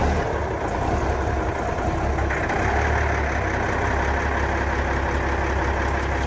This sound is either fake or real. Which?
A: real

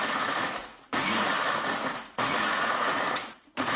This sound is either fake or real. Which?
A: fake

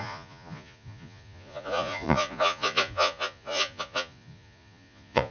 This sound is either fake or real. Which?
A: fake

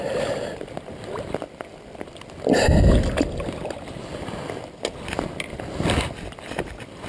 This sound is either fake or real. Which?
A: real